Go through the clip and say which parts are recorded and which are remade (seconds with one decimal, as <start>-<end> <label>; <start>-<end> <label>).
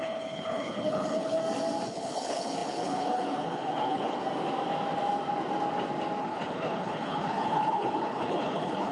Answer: 0.0-1.4 remade; 1.4-1.9 recorded; 1.9-4.2 remade; 4.2-6.2 recorded; 6.2-8.9 remade